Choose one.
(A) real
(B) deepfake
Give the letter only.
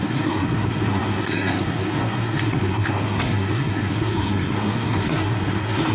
B